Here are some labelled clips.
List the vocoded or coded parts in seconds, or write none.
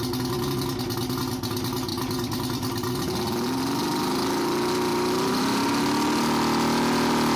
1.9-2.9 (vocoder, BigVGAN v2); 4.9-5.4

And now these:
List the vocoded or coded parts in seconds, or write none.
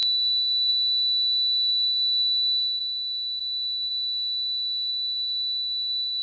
0.0-0.7 (codec, DAC); 1.7-2.8; 3.4-3.9; 4.9-6.2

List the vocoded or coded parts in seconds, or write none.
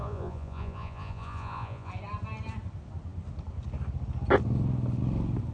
0.0-1.9 (vocoder, Vocos)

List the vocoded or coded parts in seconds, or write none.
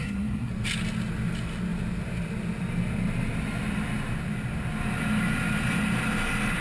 0.0-0.5 (codec, SNAC)